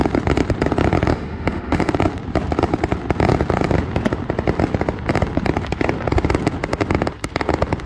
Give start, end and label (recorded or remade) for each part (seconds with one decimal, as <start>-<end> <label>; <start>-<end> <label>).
0.0-1.1 recorded; 1.1-1.9 remade; 1.9-7.9 recorded